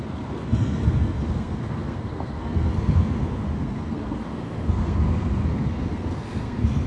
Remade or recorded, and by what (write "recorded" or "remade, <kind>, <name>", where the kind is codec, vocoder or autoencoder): remade, codec, SNAC